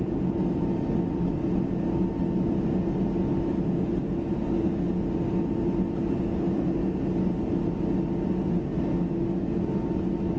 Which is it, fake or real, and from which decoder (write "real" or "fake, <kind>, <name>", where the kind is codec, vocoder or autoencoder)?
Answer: real